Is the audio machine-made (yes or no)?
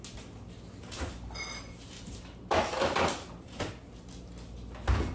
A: no